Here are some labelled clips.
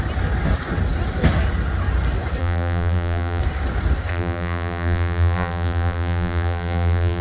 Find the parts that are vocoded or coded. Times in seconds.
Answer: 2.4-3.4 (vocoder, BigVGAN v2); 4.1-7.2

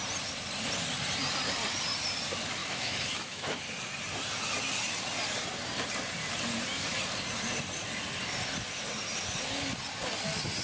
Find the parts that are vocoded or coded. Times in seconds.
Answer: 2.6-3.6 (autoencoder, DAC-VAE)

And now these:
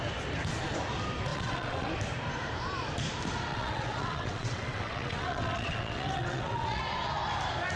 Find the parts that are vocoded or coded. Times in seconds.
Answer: 1.3-1.9 (vocoder, WaveNeXt); 3.5-6.8